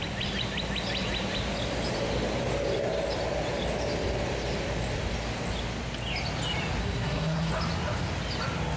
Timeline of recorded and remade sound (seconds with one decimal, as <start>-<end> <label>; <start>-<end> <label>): 0.0-6.8 recorded; 6.8-7.5 remade; 7.5-8.8 recorded